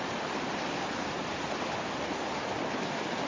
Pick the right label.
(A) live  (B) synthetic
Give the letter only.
A